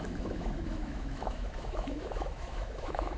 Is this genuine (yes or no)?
no